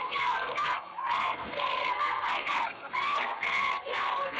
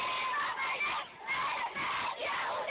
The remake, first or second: first